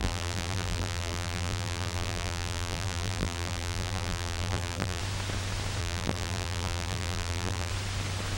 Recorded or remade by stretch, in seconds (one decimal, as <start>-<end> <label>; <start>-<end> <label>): 0.0-5.0 remade; 5.0-5.8 recorded; 5.8-7.7 remade; 7.7-8.4 recorded

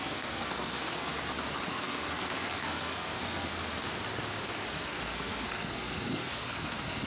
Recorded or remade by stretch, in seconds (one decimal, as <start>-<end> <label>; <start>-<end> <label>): 0.0-1.1 remade; 1.1-1.7 recorded; 1.7-3.5 remade; 3.5-4.7 recorded; 4.7-7.1 remade

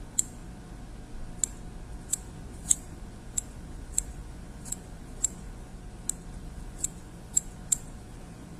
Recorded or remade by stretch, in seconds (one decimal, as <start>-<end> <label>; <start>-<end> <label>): 0.0-0.4 remade; 0.4-2.1 recorded; 2.1-5.7 remade; 5.7-6.3 recorded; 6.3-8.6 remade

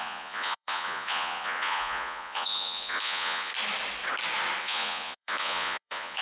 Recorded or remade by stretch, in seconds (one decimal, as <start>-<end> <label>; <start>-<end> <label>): 0.0-3.5 remade; 3.5-4.6 recorded; 4.6-6.2 remade

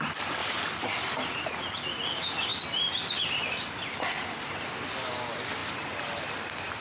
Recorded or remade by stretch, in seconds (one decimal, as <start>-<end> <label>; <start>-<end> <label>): 0.0-6.8 recorded

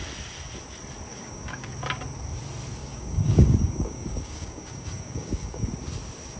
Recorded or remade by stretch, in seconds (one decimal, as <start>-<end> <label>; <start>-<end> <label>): 0.0-1.1 recorded; 1.1-1.7 remade; 1.7-2.8 recorded; 2.8-5.7 remade; 5.7-6.4 recorded

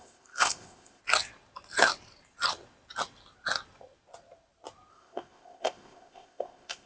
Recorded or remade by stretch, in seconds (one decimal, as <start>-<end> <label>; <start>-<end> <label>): 0.0-1.0 remade; 1.0-4.9 recorded; 4.9-6.9 remade

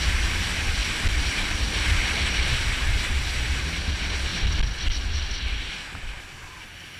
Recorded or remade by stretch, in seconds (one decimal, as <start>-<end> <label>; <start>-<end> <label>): 0.0-7.0 recorded